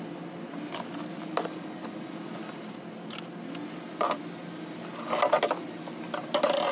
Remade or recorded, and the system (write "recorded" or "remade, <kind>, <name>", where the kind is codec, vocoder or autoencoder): recorded